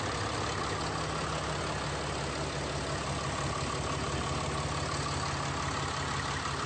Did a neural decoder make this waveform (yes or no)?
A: no